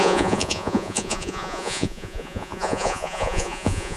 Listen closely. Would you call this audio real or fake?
fake